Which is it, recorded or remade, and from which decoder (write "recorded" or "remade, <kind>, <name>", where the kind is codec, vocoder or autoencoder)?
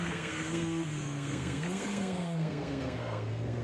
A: remade, codec, SNAC